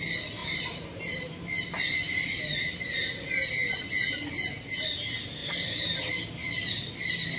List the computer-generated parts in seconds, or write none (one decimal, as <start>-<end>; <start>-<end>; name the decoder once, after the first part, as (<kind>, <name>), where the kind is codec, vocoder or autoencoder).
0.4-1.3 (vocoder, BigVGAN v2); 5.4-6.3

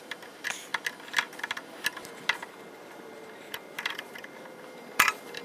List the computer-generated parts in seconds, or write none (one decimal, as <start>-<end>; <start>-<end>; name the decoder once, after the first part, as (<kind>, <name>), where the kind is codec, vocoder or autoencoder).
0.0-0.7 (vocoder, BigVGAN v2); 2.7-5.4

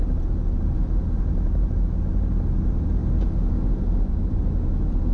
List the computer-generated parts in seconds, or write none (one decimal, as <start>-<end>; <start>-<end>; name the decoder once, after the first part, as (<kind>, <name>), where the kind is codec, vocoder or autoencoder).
none

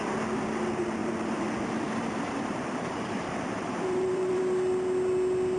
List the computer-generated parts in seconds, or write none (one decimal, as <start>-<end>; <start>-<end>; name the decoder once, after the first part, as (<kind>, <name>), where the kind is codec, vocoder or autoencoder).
1.0-4.4 (vocoder, BigVGAN v2)

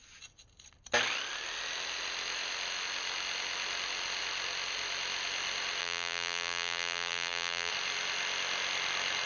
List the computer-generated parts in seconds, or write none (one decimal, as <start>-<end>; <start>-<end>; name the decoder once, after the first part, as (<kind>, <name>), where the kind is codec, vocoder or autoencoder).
5.8-7.7 (vocoder, BigVGAN v2)

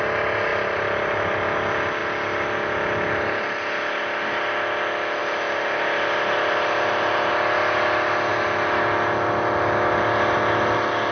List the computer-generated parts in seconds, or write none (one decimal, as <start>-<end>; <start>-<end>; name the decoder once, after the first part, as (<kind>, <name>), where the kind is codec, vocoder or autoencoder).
0.5-1.2 (vocoder, BigVGAN v2); 5.2-7.3

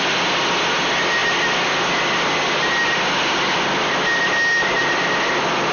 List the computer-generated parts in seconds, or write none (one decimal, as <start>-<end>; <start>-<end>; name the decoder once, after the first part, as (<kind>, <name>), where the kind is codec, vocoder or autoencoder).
none